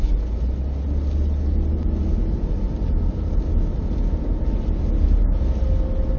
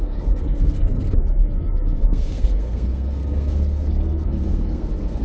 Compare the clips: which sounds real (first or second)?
first